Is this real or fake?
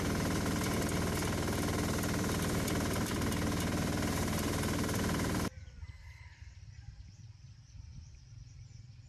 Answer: fake